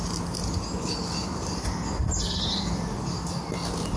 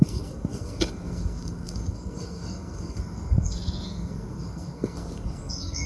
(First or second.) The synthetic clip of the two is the second